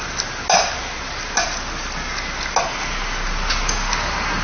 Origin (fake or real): real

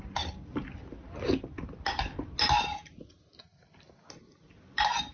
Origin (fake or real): real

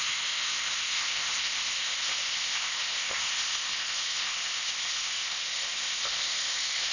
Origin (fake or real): fake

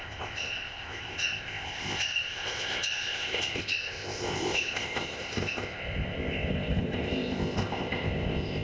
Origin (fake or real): fake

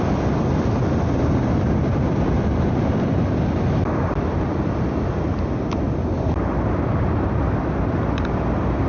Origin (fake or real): real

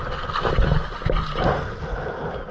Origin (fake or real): real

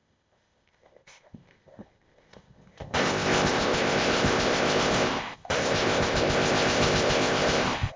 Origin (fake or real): fake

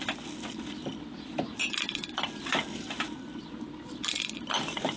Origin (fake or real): real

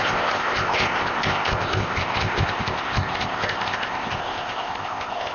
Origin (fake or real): fake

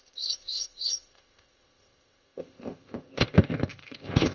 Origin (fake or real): fake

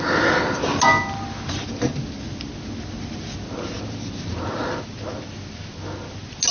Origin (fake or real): real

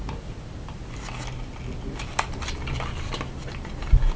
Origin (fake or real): real